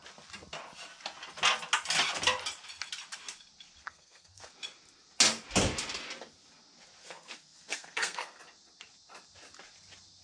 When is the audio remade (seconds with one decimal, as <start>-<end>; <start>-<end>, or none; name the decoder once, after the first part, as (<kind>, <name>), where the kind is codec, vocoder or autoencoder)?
3.8-4.5 (codec, SNAC); 7.0-8.4